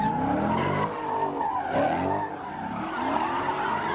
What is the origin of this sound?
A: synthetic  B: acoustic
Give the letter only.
B